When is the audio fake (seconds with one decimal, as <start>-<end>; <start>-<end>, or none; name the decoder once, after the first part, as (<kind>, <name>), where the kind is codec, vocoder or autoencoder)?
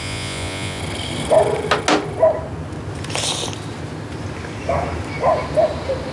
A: 0.0-0.8 (vocoder, Vocos)